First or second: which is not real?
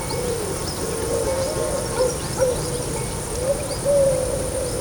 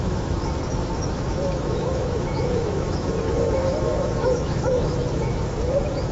second